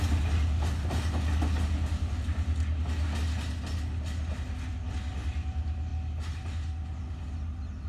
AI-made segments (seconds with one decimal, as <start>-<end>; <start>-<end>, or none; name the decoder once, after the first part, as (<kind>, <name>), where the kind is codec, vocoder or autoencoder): none